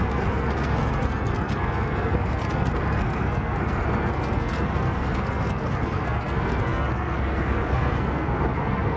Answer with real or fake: fake